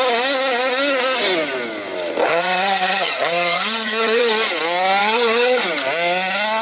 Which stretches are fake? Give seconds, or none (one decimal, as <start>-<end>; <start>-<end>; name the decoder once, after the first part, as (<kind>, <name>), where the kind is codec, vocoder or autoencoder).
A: 2.2-4.3 (vocoder, HiFi-GAN); 5.0-5.6